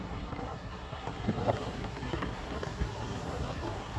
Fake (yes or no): yes